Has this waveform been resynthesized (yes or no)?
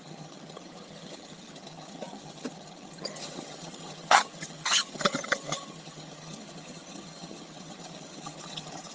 yes